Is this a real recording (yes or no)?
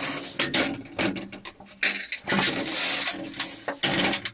yes